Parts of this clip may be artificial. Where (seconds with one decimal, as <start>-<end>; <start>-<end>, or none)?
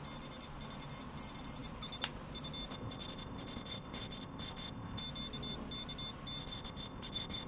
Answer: 2.7-5.0; 6.4-7.5